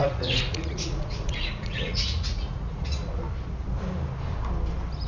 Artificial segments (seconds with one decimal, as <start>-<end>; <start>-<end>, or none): 0.0-3.1